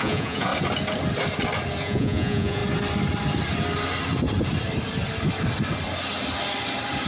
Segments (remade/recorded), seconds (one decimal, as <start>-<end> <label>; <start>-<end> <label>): 0.0-0.5 remade; 0.5-1.8 recorded; 1.8-2.6 remade; 2.6-7.1 recorded